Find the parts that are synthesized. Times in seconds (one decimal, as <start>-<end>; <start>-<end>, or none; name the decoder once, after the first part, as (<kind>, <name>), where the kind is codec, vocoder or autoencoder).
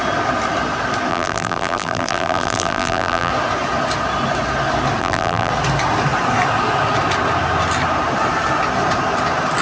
1.1-3.3 (vocoder, BigVGAN v2); 5.0-5.5